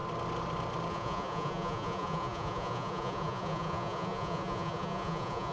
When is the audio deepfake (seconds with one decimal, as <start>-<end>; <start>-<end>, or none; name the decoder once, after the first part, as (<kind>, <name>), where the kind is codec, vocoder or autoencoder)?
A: 0.9-5.5 (vocoder, Vocos)

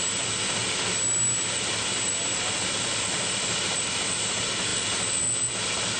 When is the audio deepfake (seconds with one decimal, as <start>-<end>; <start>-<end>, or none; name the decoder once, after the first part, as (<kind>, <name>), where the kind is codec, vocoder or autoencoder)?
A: none

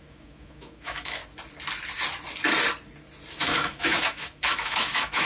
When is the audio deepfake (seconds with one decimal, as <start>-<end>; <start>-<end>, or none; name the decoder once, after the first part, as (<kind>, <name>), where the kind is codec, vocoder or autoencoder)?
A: 0.0-1.2 (autoencoder, DAC-VAE); 3.4-5.3

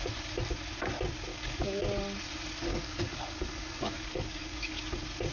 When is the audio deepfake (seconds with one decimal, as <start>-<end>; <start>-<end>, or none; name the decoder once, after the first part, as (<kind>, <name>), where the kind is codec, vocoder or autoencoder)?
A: 1.3-1.8 (codec, DAC); 2.7-4.8